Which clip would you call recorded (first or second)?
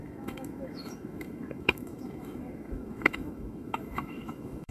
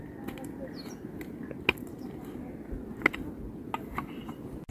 second